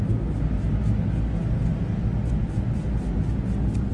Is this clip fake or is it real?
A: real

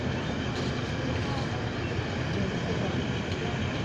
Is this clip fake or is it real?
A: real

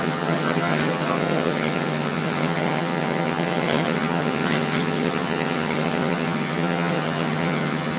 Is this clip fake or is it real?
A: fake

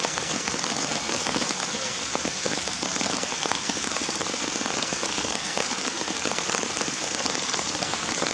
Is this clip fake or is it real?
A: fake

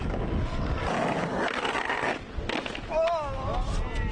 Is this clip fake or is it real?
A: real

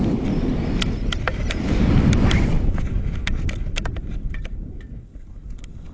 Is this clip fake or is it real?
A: real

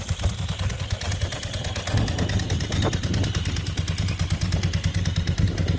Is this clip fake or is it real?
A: real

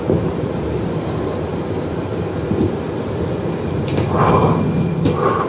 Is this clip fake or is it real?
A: real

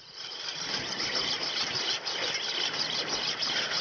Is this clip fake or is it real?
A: real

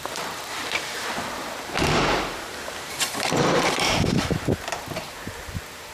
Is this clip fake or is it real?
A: fake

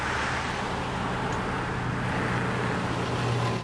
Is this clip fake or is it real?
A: real